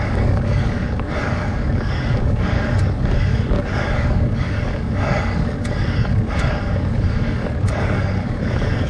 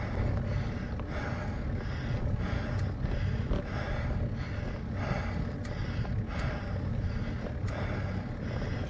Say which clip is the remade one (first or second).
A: first